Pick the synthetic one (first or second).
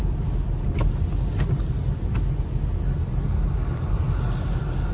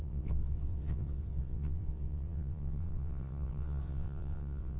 second